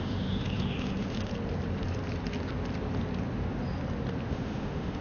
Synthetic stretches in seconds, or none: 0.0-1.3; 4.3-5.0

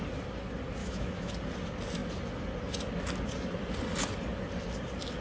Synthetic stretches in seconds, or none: 0.8-1.3

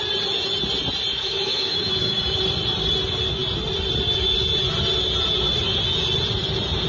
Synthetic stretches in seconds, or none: 1.1-2.4

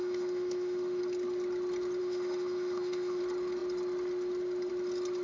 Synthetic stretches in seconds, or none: 0.0-1.0; 2.0-3.2